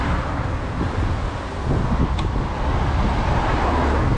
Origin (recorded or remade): recorded